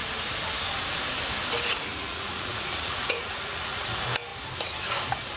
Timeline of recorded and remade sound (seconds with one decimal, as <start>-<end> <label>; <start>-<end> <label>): 0.0-1.9 recorded; 1.9-3.9 remade; 3.9-5.4 recorded